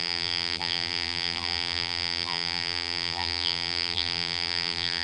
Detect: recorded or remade remade